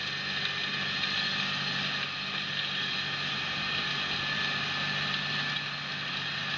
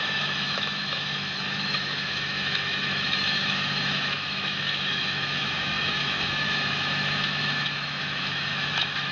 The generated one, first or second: second